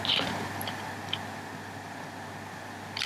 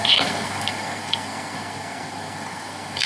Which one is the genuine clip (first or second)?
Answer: first